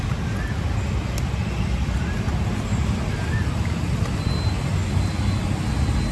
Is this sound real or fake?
real